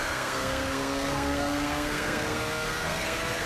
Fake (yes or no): yes